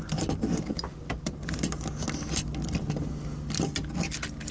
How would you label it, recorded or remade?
recorded